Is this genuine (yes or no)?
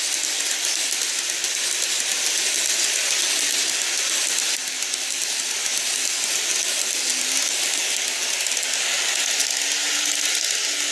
yes